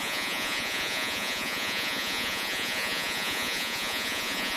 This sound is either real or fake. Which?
fake